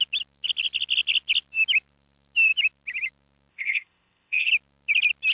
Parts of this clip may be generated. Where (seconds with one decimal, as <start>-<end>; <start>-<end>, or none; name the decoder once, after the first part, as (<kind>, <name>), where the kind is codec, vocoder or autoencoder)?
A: 3.5-4.5 (codec, ZipCodec)